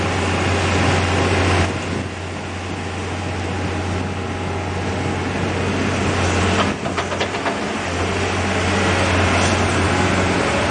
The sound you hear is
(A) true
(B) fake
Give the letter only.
A